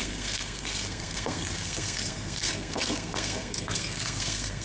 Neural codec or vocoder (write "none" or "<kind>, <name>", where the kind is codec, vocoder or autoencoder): codec, SNAC